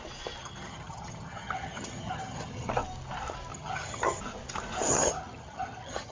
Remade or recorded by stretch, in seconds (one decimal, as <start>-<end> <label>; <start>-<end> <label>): 0.0-0.4 recorded; 0.4-2.7 remade; 2.7-3.5 recorded; 3.5-4.2 remade; 4.2-4.9 recorded; 4.9-6.1 remade